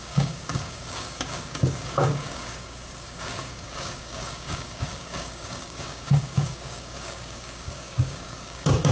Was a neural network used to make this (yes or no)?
yes